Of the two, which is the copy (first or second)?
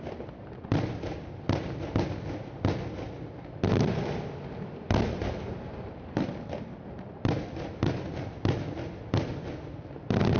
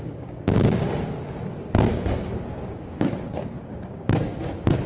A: second